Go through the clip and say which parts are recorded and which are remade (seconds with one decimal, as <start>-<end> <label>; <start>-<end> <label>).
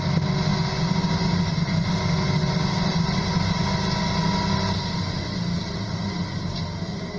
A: 0.0-7.2 recorded